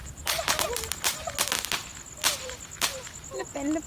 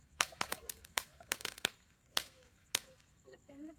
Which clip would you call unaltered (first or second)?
first